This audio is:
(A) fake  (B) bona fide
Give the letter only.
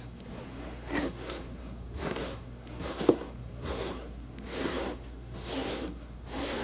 A